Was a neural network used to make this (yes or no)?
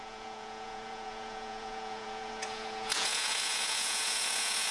yes